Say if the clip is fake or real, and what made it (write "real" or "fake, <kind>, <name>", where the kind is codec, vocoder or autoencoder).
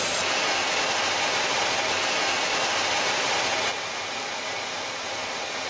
real